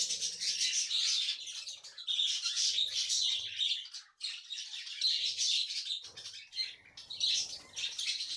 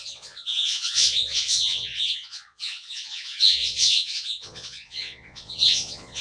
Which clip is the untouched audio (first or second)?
first